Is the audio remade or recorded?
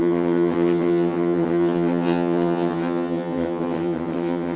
remade